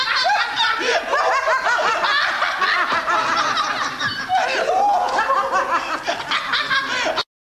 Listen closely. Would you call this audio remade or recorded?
recorded